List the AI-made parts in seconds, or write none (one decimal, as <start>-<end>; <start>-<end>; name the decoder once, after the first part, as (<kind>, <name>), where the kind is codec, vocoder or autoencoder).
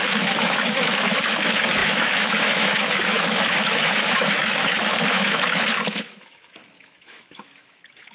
0.0-8.1 (autoencoder, DAC-VAE)